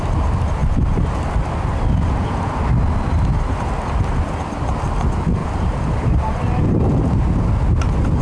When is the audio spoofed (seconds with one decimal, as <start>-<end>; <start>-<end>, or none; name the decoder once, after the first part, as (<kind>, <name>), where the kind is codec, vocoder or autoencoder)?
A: 5.4-7.5 (vocoder, BigVGAN v2)